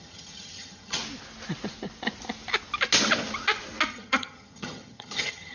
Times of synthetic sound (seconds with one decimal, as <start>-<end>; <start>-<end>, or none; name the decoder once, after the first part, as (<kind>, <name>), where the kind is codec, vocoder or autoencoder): 0.0-1.0 (vocoder, HiFi-GAN); 3.9-5.5